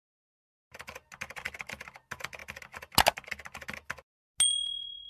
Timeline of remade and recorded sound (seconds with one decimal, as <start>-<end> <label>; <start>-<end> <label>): 0.0-5.1 recorded